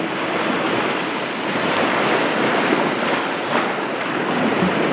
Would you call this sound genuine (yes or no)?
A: yes